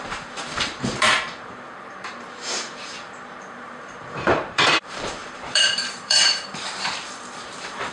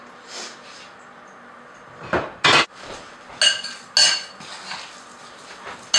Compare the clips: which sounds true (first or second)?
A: second